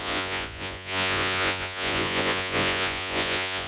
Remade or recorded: remade